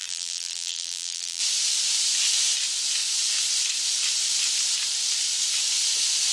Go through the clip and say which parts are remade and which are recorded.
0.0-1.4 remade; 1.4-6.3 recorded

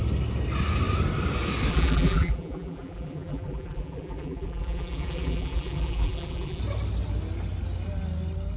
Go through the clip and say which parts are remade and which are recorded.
0.0-1.7 recorded; 1.7-6.6 remade; 6.6-8.6 recorded

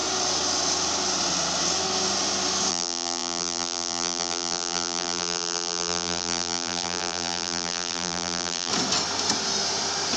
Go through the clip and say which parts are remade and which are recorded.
0.0-2.7 recorded; 2.7-8.7 remade; 8.7-10.2 recorded

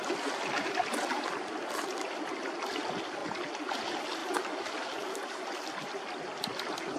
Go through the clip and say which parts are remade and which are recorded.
0.0-7.0 recorded

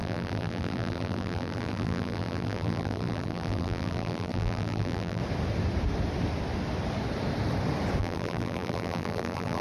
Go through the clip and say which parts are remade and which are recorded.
0.0-5.2 remade; 5.2-8.0 recorded; 8.0-9.6 remade

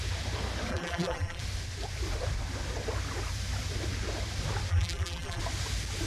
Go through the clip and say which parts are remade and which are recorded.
0.0-0.7 recorded; 0.7-1.4 remade; 1.4-4.7 recorded; 4.7-5.4 remade; 5.4-6.1 recorded

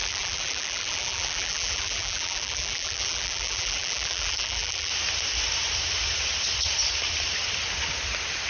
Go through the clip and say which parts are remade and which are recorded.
0.0-4.9 remade; 4.9-8.5 recorded

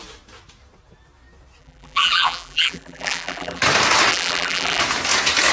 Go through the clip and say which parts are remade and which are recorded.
0.0-1.6 recorded; 1.6-3.6 remade; 3.6-4.1 recorded; 4.1-4.8 remade; 4.8-5.5 recorded